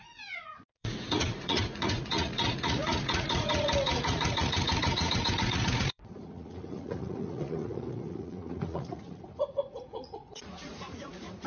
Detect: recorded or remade remade